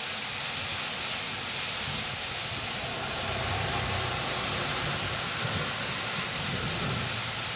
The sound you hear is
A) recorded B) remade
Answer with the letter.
A